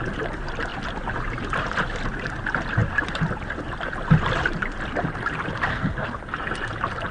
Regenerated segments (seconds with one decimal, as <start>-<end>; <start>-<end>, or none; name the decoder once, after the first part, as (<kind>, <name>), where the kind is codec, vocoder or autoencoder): 5.7-6.2 (codec, SNAC)